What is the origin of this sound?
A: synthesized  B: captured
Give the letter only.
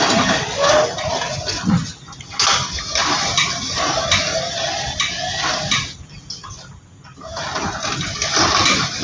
B